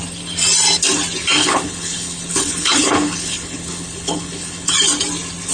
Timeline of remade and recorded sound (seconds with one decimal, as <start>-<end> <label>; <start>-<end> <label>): 0.0-1.4 recorded; 1.4-4.7 remade; 4.7-5.5 recorded

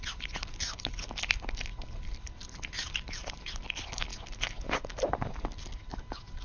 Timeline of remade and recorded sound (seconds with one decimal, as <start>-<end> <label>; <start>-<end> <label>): 0.0-6.4 recorded